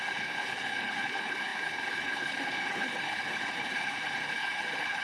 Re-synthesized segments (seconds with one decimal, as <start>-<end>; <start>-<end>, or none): 0.0-5.0